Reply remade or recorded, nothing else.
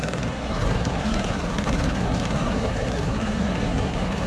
remade